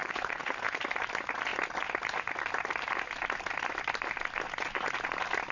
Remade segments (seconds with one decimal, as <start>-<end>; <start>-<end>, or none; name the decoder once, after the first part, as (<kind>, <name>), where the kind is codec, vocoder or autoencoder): 0.0-0.8 (codec, HILCodec)

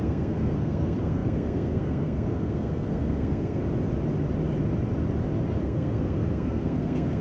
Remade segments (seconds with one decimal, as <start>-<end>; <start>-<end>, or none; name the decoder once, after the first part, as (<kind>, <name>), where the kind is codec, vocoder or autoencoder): 0.0-3.6 (codec, SNAC); 5.6-7.2

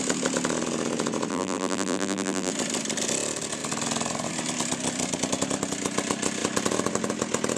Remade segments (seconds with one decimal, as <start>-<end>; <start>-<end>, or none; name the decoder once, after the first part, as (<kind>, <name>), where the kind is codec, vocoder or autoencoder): 1.3-2.5 (vocoder, BigVGAN v2)

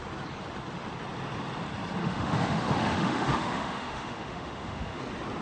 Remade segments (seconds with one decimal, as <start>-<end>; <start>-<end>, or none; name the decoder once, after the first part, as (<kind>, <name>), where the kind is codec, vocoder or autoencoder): 2.0-5.0 (autoencoder, DAC-VAE)

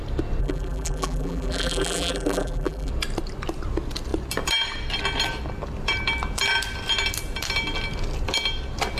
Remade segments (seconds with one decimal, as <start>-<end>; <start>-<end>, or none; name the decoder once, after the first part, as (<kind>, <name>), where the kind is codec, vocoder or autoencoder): 0.4-2.9 (vocoder, BigVGAN v2)

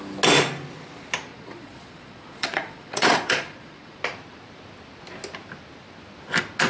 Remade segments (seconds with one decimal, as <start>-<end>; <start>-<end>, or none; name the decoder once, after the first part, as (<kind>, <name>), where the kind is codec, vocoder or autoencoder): 1.3-4.0 (vocoder, Vocos)

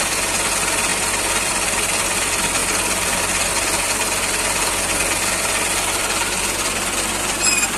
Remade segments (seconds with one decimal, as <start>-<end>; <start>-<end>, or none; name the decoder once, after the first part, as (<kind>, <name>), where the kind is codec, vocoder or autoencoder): 0.9-1.5 (vocoder, BigVGAN v2)

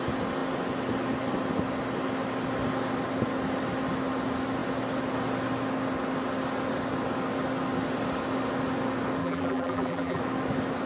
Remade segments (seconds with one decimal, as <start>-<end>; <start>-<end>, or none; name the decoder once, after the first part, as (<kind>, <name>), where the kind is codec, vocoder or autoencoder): 9.2-10.2 (vocoder, BigVGAN v2)